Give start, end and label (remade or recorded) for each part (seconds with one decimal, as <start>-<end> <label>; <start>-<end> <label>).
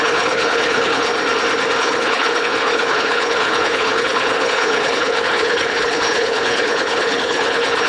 0.0-1.1 remade; 1.1-1.8 recorded; 1.8-7.9 remade